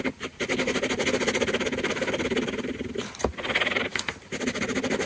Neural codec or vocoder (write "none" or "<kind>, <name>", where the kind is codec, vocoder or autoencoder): none